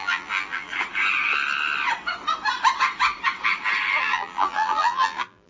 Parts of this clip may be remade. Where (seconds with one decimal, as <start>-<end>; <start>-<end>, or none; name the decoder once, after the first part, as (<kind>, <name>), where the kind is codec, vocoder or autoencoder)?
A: 0.0-0.7 (vocoder, BigVGAN v2); 4.0-5.5

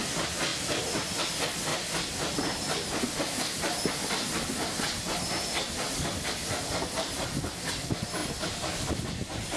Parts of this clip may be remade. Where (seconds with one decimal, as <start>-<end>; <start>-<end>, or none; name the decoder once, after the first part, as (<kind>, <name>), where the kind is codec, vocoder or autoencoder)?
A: 1.7-3.4 (vocoder, BigVGAN v2); 8.2-8.9

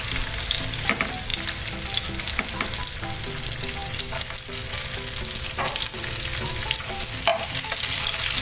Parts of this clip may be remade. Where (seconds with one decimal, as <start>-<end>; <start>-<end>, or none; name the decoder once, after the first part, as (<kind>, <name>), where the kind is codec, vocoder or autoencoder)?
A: 7.3-8.4 (vocoder, BigVGAN v2)

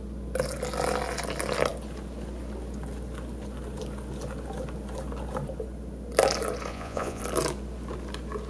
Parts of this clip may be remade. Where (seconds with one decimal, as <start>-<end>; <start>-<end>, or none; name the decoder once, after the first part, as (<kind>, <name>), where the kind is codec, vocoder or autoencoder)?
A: 6.7-7.2 (vocoder, Vocos)

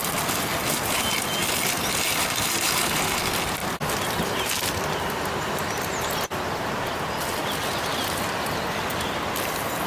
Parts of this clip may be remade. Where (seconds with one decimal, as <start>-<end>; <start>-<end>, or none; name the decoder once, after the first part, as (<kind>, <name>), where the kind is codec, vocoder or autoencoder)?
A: none

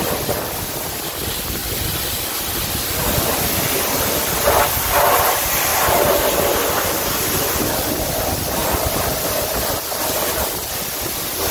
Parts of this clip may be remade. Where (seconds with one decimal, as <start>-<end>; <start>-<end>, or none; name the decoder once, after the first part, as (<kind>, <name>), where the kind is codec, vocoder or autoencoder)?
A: 1.6-3.2 (vocoder, BigVGAN v2); 5.7-7.6; 8.6-9.9

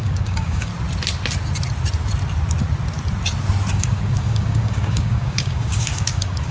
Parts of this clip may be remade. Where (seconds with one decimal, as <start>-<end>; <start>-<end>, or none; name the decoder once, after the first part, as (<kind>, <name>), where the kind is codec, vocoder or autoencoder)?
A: 0.0-0.7 (codec, DAC); 3.7-6.5

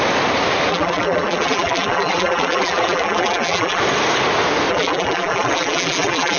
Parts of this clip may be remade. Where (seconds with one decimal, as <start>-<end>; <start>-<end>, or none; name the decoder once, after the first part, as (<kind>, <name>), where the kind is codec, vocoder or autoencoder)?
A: 0.7-3.8 (vocoder, BigVGAN v2); 4.7-6.4